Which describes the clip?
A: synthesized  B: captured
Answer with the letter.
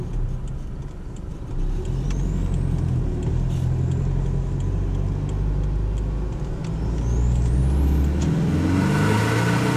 B